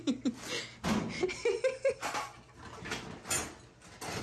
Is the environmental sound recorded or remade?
recorded